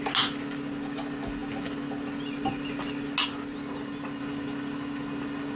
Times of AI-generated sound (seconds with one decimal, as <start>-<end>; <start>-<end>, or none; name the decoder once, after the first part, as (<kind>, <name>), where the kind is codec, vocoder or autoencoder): none